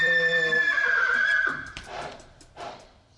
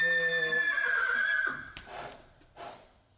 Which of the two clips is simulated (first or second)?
first